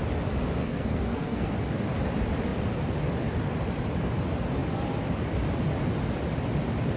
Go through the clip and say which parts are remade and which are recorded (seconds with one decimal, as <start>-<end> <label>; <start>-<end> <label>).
0.0-0.6 recorded; 0.6-1.5 remade; 1.5-7.0 recorded

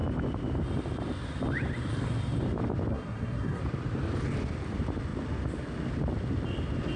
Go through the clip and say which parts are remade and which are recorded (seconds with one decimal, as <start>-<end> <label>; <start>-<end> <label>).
0.0-2.9 recorded; 2.9-3.6 remade; 3.6-7.0 recorded

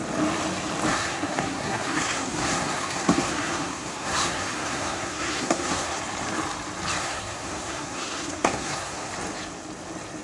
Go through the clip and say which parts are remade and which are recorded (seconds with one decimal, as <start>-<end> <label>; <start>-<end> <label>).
0.0-0.9 recorded; 0.9-6.0 remade; 6.0-7.0 recorded; 7.0-9.1 remade; 9.1-10.2 recorded

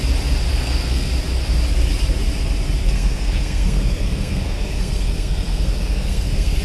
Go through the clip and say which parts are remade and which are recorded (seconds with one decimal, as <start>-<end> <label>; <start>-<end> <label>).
0.0-0.5 recorded; 0.5-1.1 remade; 1.1-2.8 recorded; 2.8-6.6 remade